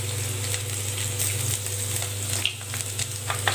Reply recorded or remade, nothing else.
recorded